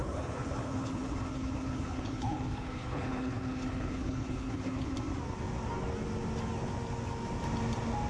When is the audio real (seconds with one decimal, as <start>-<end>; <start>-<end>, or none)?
4.9-8.1